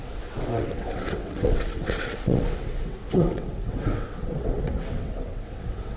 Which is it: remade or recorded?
remade